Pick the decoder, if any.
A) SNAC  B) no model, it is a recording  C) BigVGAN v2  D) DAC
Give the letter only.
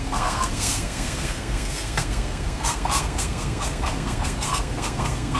A